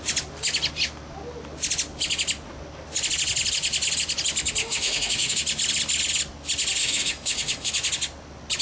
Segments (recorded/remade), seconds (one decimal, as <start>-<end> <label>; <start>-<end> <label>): 0.0-4.6 recorded; 4.6-5.4 remade; 5.4-6.8 recorded; 6.8-7.7 remade; 7.7-8.6 recorded